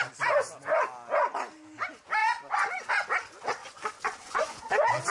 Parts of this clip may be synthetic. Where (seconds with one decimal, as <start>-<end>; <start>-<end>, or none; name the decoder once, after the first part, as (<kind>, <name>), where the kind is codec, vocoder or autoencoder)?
2.2-2.9 (vocoder, Vocos); 3.6-4.6